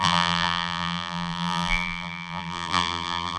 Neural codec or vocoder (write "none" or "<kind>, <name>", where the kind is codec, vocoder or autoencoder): vocoder, BigVGAN v2